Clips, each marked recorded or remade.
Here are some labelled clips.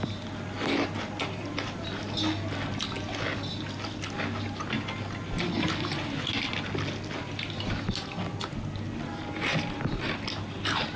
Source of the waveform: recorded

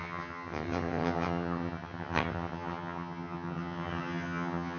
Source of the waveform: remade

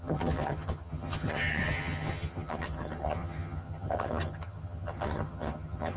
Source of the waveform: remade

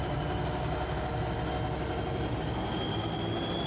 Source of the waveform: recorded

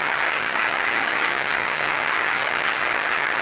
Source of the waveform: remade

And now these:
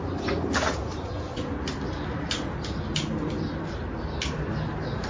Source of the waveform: recorded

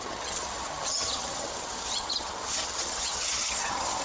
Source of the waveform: remade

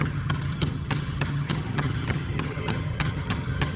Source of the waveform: remade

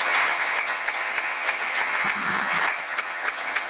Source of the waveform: remade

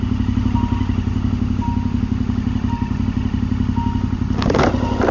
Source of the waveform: recorded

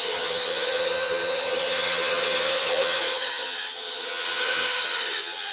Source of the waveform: remade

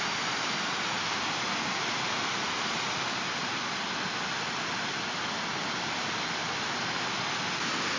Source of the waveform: recorded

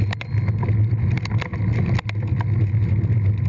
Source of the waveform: recorded